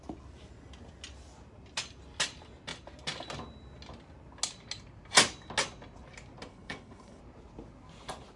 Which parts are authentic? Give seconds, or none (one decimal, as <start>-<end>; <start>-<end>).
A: 0.0-6.5; 7.2-8.4